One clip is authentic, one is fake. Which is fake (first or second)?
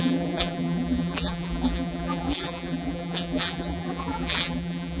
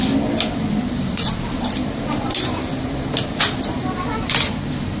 first